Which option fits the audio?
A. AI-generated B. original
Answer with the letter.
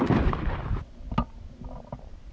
B